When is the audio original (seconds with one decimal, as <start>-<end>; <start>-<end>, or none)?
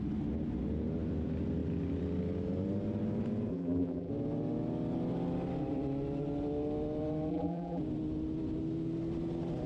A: 0.0-3.5; 4.1-7.3; 7.8-9.7